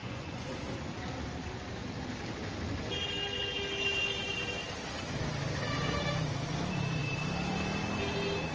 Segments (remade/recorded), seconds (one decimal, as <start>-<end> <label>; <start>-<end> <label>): 0.0-0.5 remade; 0.5-8.5 recorded